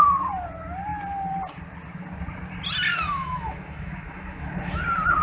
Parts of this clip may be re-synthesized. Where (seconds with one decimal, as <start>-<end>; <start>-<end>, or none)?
2.9-4.8